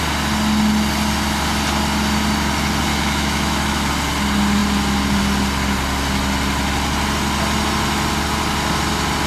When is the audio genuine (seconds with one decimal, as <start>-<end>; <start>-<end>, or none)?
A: 0.0-2.9; 3.9-9.3